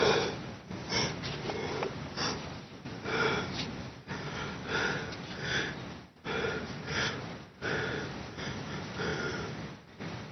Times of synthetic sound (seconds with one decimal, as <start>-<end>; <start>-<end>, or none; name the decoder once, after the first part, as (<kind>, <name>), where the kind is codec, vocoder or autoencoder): none